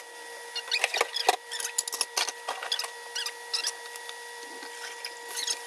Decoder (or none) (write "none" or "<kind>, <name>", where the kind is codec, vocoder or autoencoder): none